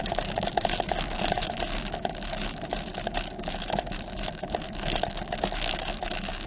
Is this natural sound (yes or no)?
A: no